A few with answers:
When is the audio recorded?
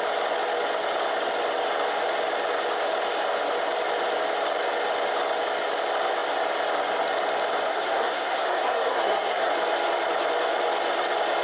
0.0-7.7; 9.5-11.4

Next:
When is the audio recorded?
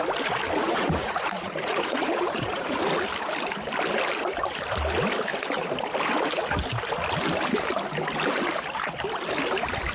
0.0-0.6; 2.8-9.9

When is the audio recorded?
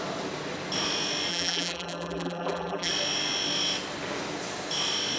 0.0-1.3; 2.9-5.2